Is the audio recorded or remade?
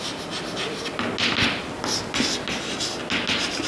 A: recorded